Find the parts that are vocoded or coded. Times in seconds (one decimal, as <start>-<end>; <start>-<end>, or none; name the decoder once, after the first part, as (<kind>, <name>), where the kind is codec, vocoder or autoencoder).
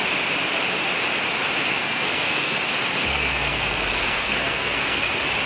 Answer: 1.7-2.6 (codec, SNAC); 3.1-5.1